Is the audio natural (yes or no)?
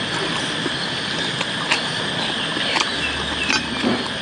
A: yes